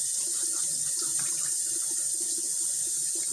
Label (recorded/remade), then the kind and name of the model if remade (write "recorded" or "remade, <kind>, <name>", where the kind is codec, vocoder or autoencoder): remade, vocoder, BigVGAN v2